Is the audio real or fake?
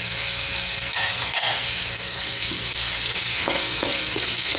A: fake